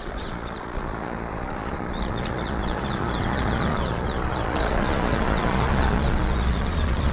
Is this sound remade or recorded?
remade